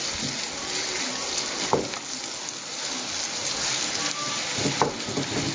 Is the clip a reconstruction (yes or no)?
no